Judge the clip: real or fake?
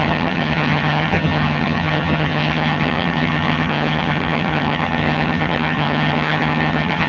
fake